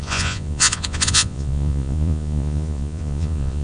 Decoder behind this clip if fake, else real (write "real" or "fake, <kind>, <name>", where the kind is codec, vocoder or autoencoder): fake, vocoder, Vocos